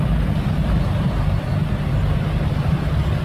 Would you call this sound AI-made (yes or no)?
no